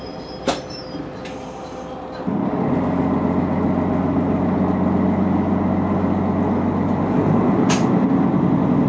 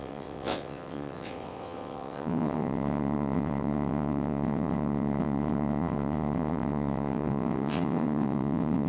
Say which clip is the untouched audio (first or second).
first